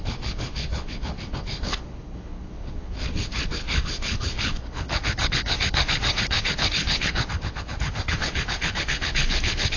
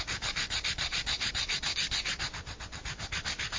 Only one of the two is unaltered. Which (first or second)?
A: second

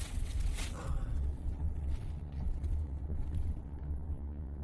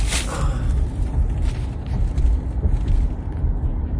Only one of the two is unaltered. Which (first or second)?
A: second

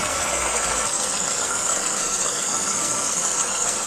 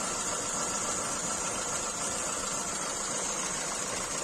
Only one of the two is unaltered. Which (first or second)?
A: second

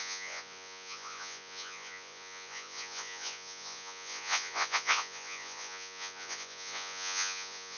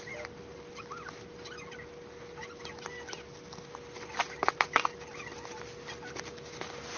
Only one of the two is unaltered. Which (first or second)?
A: second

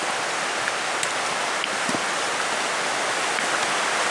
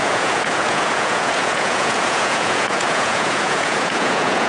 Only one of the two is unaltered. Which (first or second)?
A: first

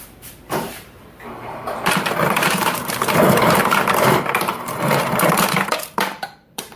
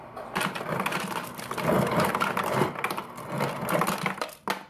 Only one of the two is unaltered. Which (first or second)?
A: second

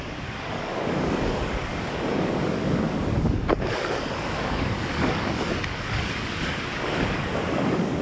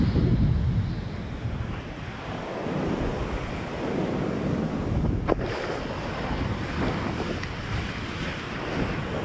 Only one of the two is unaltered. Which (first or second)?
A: second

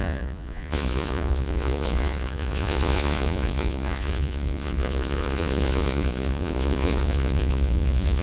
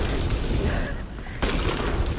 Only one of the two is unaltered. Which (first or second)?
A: second